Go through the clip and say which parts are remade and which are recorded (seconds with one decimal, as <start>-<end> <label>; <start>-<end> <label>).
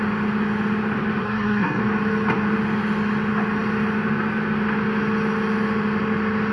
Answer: 0.0-1.2 recorded; 1.2-1.8 remade; 1.8-6.5 recorded